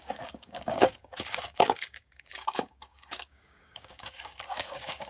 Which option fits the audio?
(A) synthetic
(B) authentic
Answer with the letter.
A